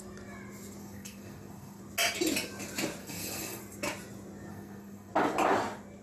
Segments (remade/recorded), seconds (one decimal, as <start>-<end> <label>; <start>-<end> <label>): 0.0-0.8 recorded; 0.8-1.8 remade; 1.8-3.0 recorded; 3.0-3.6 remade; 3.6-4.5 recorded; 4.5-5.1 remade; 5.1-6.0 recorded